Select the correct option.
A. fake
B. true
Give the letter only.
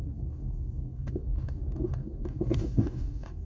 A